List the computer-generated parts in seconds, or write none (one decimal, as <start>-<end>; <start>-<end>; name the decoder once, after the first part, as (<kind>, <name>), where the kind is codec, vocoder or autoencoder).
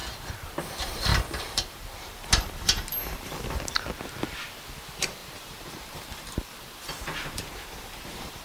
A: 1.1-3.3 (vocoder, BigVGAN v2); 5.2-8.4